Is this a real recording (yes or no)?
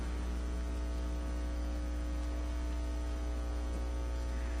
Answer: yes